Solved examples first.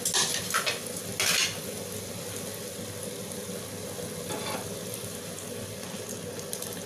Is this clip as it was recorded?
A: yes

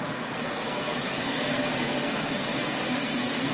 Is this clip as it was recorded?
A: no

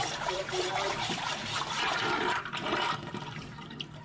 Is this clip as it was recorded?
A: no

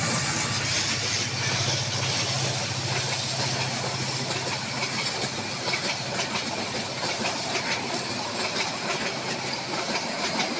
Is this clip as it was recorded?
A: yes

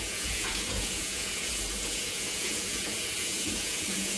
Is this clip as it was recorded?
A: no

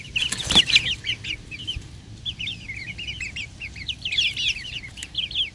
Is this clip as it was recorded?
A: no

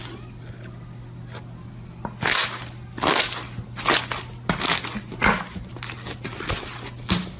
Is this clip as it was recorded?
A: yes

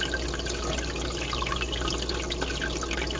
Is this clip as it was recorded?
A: yes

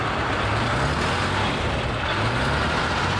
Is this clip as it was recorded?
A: yes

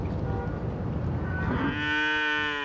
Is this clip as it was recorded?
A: yes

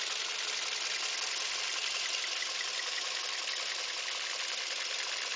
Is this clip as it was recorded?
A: yes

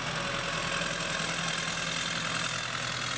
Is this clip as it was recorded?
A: yes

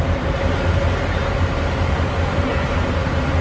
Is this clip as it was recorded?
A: yes